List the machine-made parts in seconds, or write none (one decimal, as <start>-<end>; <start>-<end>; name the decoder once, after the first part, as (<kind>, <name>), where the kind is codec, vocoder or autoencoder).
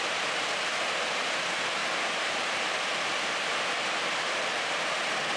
1.8-5.0 (vocoder, BigVGAN v2)